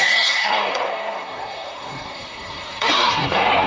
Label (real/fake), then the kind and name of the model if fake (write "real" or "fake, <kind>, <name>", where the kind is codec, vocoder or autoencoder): fake, codec, SNAC